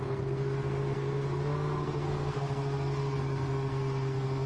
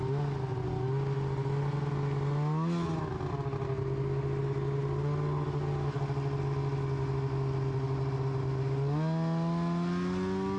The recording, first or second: second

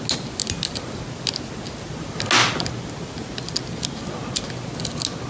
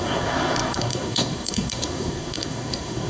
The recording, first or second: first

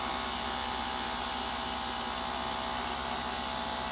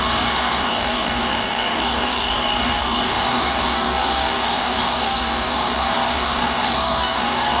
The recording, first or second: first